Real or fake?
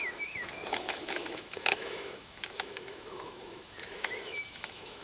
fake